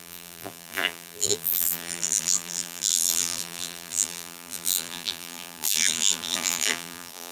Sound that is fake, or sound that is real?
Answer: fake